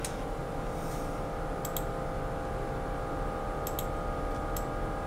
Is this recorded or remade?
recorded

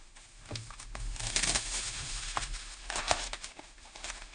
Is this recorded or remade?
remade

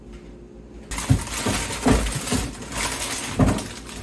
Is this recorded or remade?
recorded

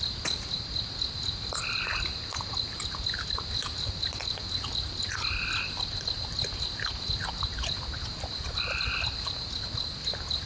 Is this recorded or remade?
recorded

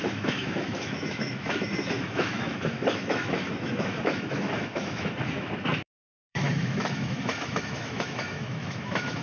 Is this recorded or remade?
remade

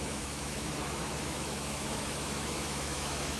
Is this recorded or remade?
remade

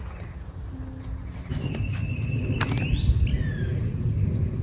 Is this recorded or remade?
recorded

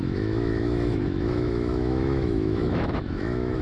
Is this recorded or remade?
remade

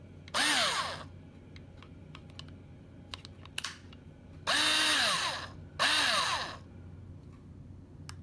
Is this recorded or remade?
recorded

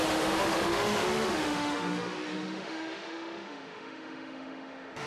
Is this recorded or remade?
remade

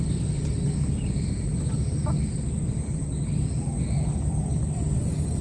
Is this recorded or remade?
recorded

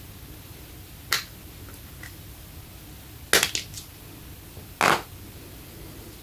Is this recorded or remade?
recorded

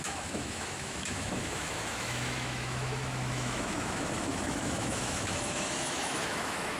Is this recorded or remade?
remade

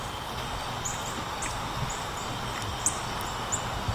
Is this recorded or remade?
recorded